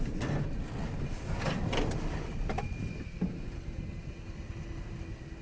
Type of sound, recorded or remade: recorded